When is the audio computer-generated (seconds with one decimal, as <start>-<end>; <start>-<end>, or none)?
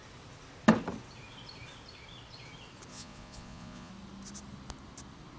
2.9-3.9